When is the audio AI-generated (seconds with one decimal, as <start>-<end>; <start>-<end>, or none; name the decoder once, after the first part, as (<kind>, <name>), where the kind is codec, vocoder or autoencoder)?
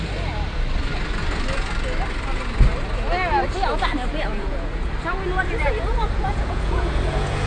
4.3-4.9 (vocoder, Vocos); 5.6-7.5